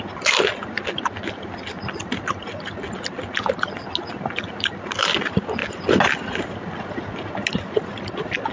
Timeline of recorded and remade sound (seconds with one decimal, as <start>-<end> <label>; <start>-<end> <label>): 0.0-8.5 recorded